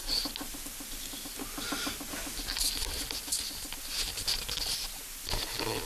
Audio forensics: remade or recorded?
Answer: recorded